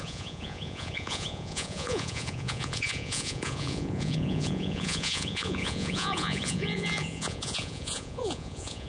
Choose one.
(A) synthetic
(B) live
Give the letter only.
A